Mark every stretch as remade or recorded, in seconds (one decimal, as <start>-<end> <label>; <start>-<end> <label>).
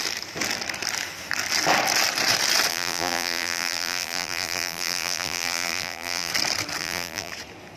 0.0-2.7 recorded; 2.7-6.3 remade; 6.3-6.8 recorded; 6.8-7.3 remade; 7.3-7.8 recorded